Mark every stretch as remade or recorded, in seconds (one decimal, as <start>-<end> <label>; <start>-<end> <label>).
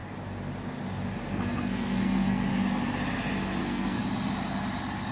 0.0-1.3 recorded; 1.3-2.5 remade; 2.5-3.6 recorded; 3.6-4.0 remade; 4.0-5.1 recorded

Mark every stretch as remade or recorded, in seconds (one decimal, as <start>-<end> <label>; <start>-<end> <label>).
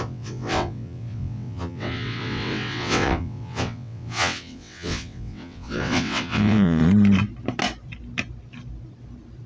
0.0-6.8 remade; 6.8-9.5 recorded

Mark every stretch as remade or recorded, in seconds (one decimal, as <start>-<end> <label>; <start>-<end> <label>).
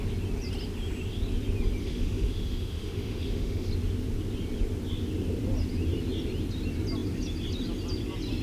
0.0-1.8 recorded; 1.8-3.7 remade; 3.7-8.4 recorded